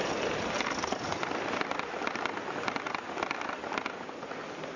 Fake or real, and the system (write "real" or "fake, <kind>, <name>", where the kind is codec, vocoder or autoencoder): real